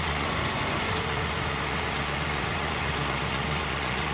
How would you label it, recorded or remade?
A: remade